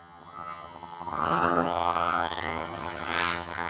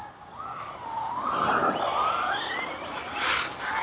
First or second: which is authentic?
second